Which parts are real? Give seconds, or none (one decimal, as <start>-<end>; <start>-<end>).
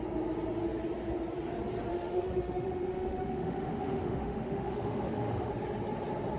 0.0-1.9; 5.5-6.4